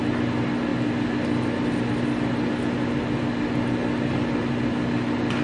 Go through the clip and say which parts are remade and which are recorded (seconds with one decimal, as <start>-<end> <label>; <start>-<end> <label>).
0.0-5.4 recorded